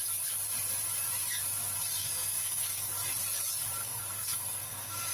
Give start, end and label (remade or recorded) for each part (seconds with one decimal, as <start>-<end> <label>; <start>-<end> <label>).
0.0-2.0 recorded; 2.0-2.9 remade; 2.9-3.8 recorded; 3.8-5.1 remade